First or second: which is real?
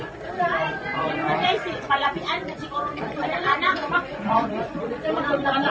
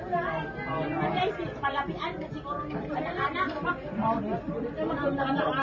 second